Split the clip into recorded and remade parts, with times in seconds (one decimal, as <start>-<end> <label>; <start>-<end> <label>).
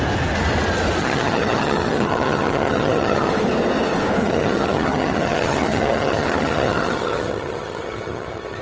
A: 0.0-1.0 recorded; 1.0-3.3 remade; 3.3-4.2 recorded; 4.2-8.6 remade